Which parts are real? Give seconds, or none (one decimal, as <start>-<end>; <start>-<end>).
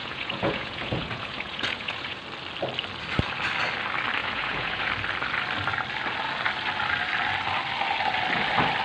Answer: 2.2-4.2; 4.9-8.8